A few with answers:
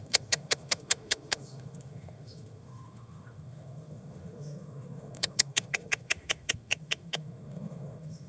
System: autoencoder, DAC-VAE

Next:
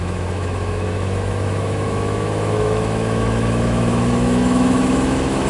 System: autoencoder, DAC-VAE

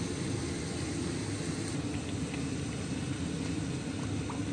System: none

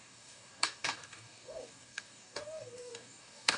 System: codec, DAC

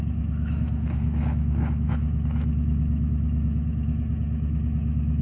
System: autoencoder, DAC-VAE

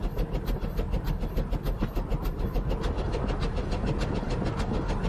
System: none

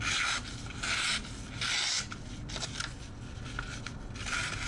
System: none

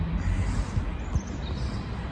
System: none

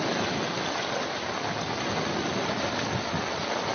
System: none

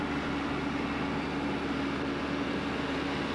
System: none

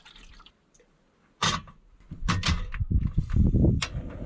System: none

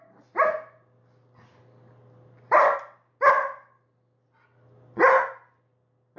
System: none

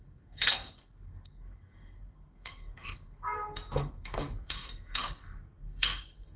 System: codec, SNAC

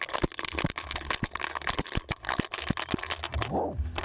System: none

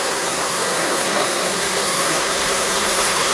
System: codec, SNAC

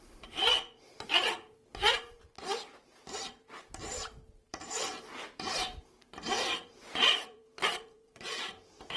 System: vocoder, BigVGAN v2